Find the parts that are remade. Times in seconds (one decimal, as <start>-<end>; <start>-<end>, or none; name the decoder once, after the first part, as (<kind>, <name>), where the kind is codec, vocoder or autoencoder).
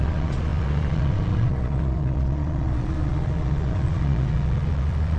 0.0-5.2 (vocoder, Vocos)